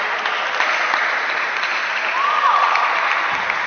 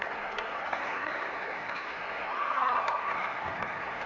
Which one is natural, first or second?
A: first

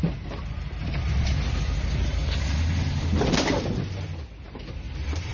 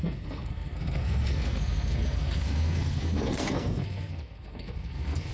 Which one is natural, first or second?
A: first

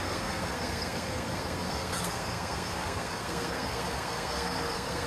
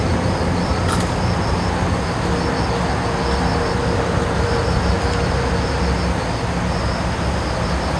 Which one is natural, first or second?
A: second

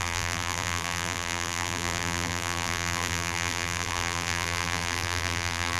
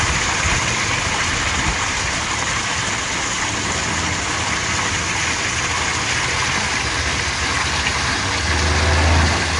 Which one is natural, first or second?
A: second